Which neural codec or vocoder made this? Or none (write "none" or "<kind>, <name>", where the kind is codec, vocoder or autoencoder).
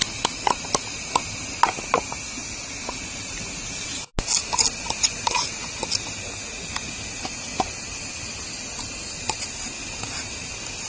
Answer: none